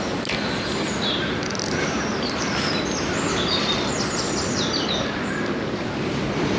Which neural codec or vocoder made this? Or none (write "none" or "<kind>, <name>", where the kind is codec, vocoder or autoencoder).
none